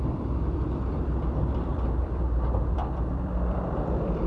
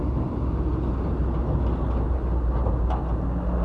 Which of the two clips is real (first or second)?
second